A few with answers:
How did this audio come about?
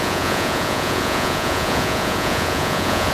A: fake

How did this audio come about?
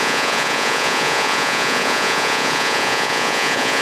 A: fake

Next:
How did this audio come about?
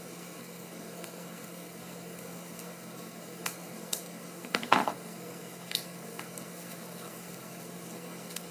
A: fake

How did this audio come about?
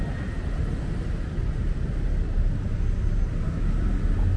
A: real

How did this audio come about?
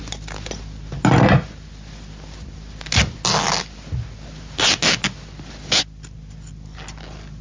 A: real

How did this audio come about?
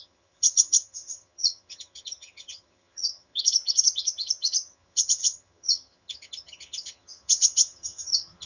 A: fake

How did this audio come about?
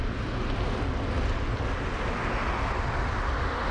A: real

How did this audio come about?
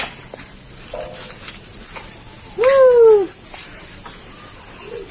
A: real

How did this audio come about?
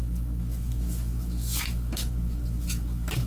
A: fake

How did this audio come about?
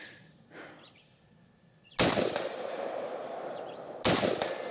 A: real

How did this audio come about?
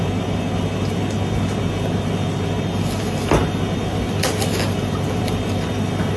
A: real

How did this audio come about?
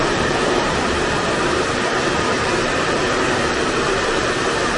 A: fake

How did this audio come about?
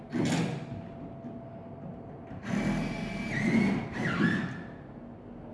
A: real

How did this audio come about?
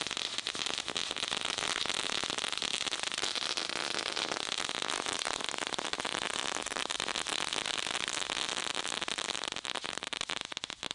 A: real